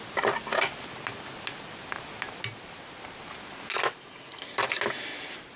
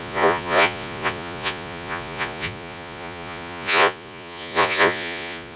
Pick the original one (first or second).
first